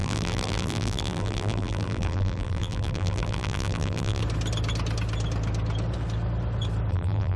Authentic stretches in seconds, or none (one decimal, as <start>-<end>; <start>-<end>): 4.2-6.9